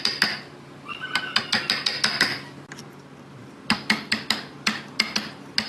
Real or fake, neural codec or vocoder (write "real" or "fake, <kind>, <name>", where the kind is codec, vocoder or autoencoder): real